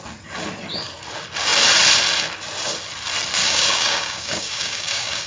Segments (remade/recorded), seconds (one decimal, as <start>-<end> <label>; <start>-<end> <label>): 0.0-3.4 recorded; 3.4-5.3 remade